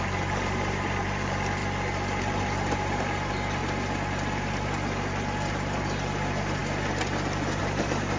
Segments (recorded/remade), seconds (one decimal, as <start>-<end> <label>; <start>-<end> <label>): 0.0-1.6 remade; 1.6-2.2 recorded; 2.2-3.6 remade; 3.6-5.5 recorded; 5.5-6.6 remade; 6.6-7.6 recorded; 7.6-8.2 remade